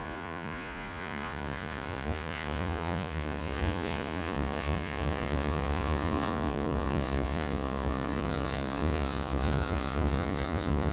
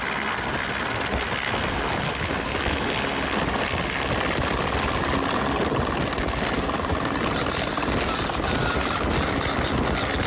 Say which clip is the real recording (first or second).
second